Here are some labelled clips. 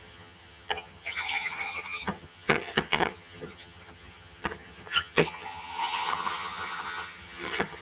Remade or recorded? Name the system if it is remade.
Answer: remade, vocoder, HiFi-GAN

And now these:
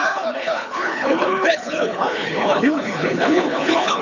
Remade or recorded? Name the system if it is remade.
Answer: remade, codec, HILCodec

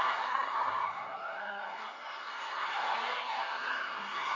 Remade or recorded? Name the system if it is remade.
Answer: remade, codec, SNAC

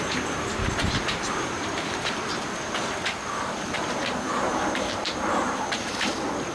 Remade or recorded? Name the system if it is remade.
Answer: remade, vocoder, BigVGAN v2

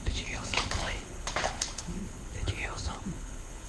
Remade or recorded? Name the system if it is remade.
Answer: remade, codec, HILCodec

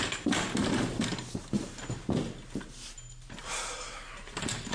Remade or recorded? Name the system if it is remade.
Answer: recorded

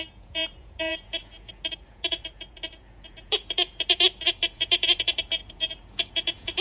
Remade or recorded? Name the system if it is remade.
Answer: remade, vocoder, Vocos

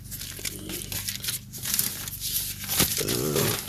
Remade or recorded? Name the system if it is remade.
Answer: recorded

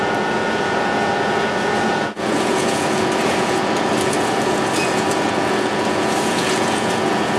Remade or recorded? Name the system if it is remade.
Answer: remade, vocoder, Vocos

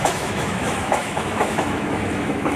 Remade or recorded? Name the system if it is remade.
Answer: remade, autoencoder, DAC-VAE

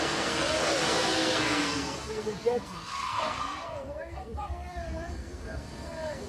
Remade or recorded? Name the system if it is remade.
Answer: remade, codec, SNAC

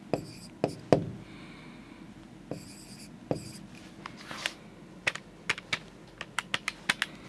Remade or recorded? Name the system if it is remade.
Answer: recorded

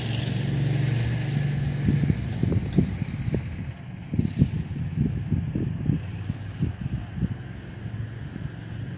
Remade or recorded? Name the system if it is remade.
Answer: recorded